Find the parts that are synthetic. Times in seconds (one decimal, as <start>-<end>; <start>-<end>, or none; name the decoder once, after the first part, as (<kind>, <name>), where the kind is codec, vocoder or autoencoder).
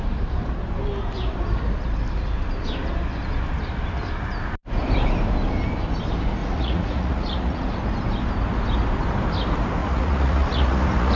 6.4-7.8 (vocoder, Vocos); 9.8-11.1